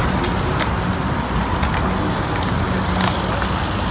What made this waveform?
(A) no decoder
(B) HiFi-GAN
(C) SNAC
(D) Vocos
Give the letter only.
A